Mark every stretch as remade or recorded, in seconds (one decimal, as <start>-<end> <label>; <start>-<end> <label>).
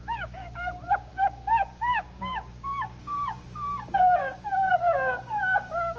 0.0-6.0 remade